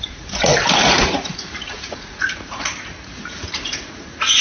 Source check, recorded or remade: remade